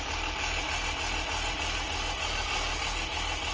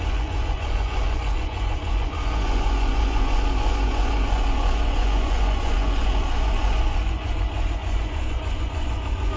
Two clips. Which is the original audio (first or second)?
first